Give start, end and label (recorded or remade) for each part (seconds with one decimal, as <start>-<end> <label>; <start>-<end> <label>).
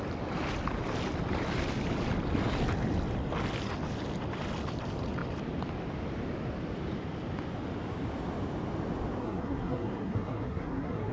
0.0-9.2 recorded; 9.2-11.1 remade